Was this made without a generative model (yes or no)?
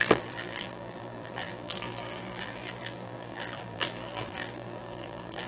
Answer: no